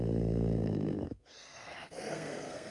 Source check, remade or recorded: remade